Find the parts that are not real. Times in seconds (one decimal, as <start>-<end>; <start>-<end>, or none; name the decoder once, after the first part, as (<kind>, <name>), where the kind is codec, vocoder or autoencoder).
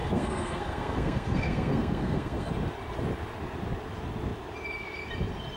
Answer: 0.0-2.5 (codec, SNAC)